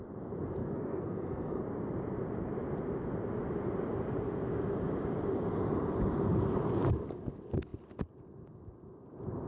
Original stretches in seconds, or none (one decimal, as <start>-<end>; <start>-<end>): 0.0-0.6; 1.6-9.5